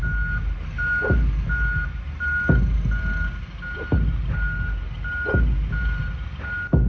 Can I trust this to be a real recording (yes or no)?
yes